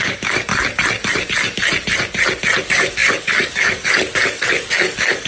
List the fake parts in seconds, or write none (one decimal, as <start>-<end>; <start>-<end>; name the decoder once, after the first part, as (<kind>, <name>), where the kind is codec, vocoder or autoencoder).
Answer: 0.0-0.5 (codec, DAC); 2.6-5.3